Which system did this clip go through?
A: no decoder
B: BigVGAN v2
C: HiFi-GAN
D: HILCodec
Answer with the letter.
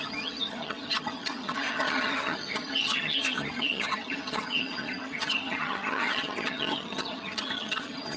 C